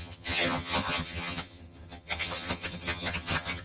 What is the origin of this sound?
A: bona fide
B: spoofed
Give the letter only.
B